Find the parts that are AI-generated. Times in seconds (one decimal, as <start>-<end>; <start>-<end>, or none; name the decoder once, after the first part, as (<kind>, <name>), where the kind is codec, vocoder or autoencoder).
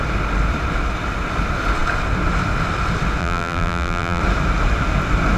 3.2-4.2 (vocoder, BigVGAN v2)